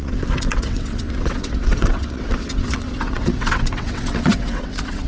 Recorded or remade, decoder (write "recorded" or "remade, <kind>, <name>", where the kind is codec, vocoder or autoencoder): remade, vocoder, WaveNeXt